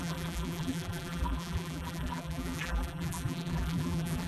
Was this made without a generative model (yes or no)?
no